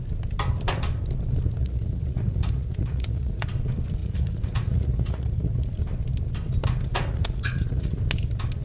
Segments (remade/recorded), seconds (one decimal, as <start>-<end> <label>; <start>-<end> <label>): 0.0-1.6 recorded; 1.6-3.5 remade; 3.5-4.0 recorded; 4.0-5.8 remade; 5.8-6.9 recorded; 6.9-8.0 remade; 8.0-8.6 recorded